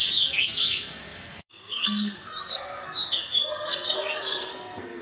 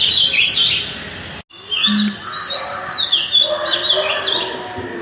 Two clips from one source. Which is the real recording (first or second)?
second